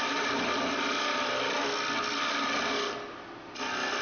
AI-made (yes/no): no